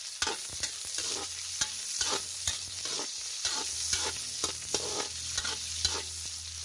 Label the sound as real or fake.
real